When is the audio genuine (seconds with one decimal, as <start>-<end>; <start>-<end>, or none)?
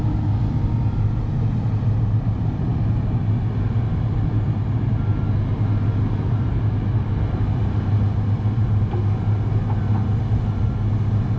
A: 0.0-11.4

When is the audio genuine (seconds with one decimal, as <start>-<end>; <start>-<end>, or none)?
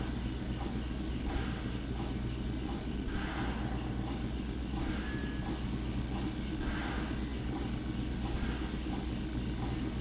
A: 0.0-10.0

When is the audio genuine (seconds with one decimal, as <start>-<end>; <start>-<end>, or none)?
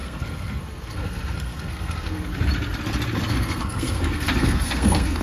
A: 2.3-3.3